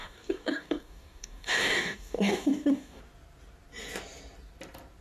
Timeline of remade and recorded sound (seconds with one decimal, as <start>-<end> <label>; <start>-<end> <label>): 0.0-3.0 remade; 3.0-5.0 recorded